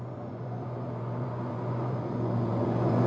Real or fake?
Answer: fake